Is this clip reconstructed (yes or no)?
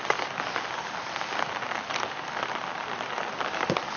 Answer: no